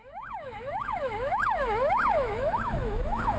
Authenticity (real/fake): fake